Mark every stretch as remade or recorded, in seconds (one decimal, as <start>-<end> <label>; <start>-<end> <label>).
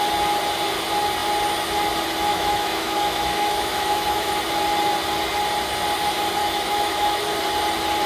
0.0-2.3 recorded; 2.3-4.4 remade; 4.4-6.4 recorded; 6.4-7.2 remade; 7.2-8.1 recorded